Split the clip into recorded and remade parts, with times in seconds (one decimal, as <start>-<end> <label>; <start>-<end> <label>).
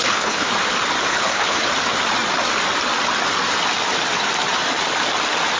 0.0-0.5 remade; 0.5-1.1 recorded; 1.1-1.7 remade; 1.7-5.6 recorded